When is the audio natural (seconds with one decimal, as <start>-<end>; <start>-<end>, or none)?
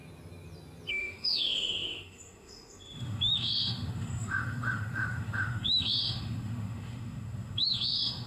0.0-0.9